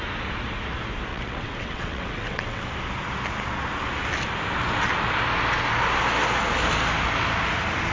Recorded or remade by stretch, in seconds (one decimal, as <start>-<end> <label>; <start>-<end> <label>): 0.0-1.1 recorded; 1.1-2.6 remade; 2.6-7.9 recorded